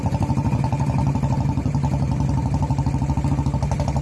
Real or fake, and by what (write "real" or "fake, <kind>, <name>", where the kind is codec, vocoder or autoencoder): real